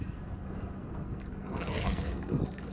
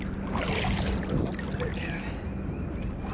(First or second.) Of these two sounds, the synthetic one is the first